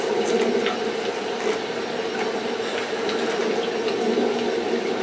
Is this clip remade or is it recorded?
recorded